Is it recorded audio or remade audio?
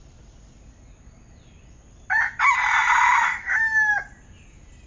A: recorded